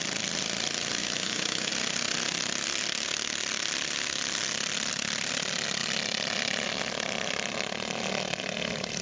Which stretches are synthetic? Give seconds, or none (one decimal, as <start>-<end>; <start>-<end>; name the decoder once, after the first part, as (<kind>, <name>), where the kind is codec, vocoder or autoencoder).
1.0-1.7 (autoencoder, DAC-VAE)